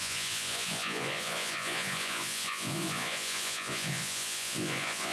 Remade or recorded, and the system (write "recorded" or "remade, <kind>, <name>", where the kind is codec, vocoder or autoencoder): remade, vocoder, Vocos